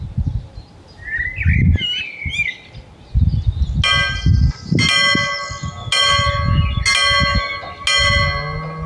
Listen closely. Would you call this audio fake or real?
real